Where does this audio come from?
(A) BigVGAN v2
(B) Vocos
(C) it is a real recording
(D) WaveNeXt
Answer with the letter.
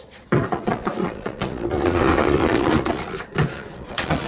B